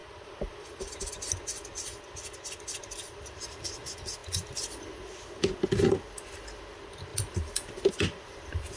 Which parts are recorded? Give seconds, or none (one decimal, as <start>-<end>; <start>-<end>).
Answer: 0.0-8.8